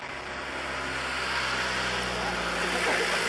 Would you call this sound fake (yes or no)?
no